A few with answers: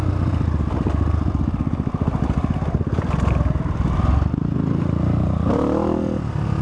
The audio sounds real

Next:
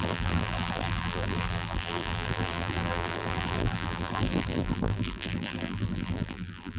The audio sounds fake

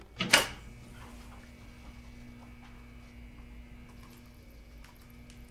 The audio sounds real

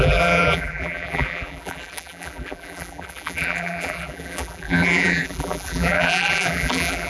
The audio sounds fake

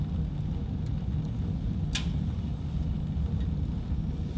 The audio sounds real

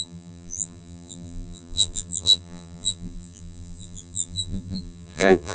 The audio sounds fake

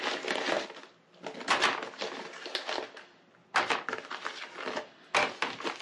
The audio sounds real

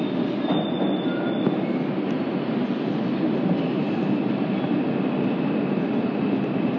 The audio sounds real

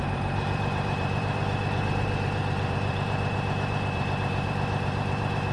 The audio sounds fake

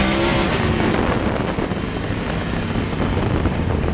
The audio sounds fake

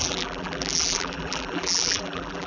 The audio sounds fake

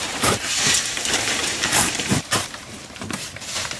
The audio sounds fake